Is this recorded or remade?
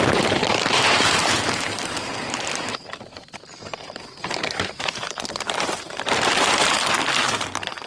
remade